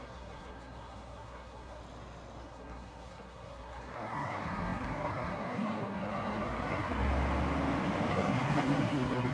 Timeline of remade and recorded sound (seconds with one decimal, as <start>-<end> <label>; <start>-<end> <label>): 0.0-1.8 remade; 1.8-2.4 recorded; 2.4-7.1 remade; 7.1-8.1 recorded; 8.1-9.3 remade